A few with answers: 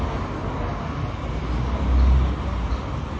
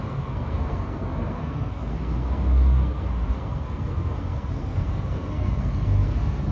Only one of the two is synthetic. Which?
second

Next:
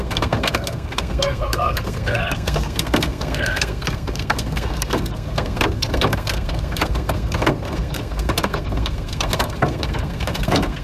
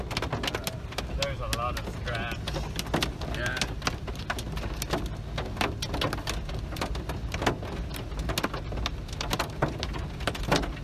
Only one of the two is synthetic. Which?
first